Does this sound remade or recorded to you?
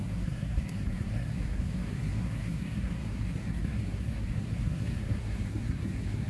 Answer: remade